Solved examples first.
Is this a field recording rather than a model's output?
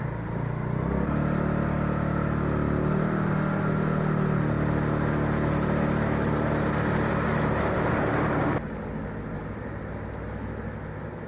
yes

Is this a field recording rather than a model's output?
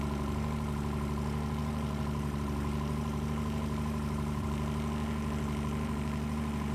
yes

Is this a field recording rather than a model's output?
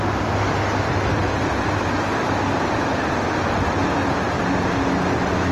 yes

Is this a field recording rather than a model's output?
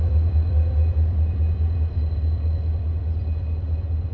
yes